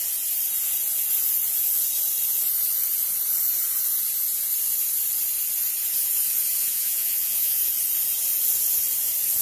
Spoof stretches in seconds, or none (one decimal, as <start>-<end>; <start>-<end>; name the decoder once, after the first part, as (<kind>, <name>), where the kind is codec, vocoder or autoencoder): 6.6-7.6 (vocoder, Vocos)